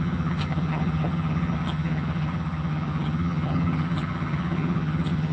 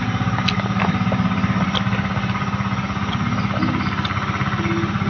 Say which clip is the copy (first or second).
first